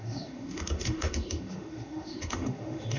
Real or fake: fake